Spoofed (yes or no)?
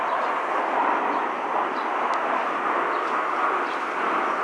no